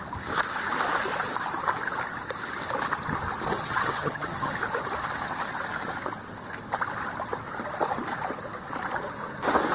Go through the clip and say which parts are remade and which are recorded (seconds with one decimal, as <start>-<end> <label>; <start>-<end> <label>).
0.0-3.5 recorded; 3.5-4.5 remade; 4.5-9.7 recorded